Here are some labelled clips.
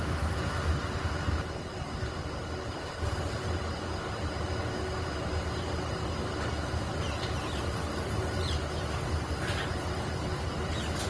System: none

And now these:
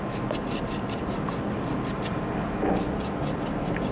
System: none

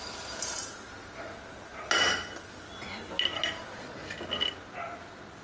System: none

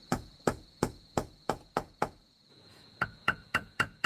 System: vocoder, Vocos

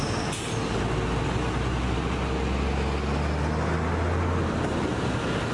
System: none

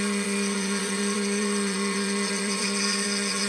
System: vocoder, Vocos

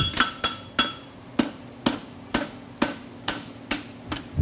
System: none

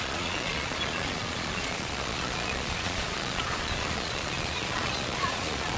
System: vocoder, Vocos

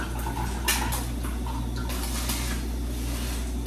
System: none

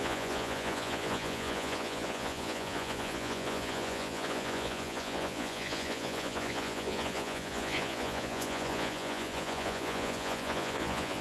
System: vocoder, Vocos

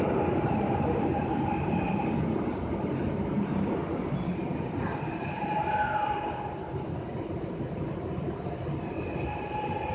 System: none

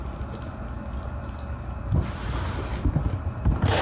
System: none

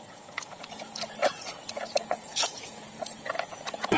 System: vocoder, Vocos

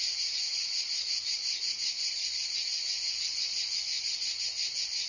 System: vocoder, Vocos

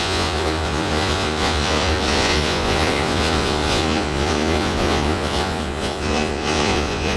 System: vocoder, Vocos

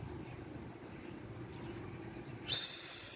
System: none